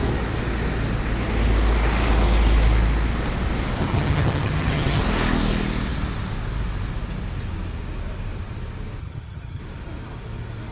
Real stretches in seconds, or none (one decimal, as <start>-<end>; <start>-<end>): 0.0-3.8; 5.0-9.0; 9.6-10.7